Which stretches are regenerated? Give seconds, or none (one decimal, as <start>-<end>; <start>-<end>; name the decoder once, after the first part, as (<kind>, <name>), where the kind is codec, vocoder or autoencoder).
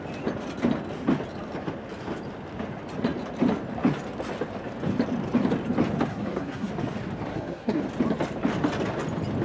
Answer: 6.1-6.7 (codec, SNAC); 7.3-7.8